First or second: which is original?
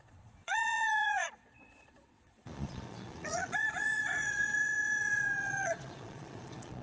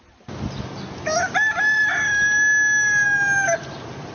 second